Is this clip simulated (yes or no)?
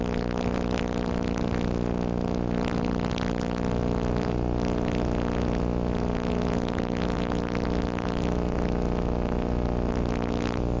no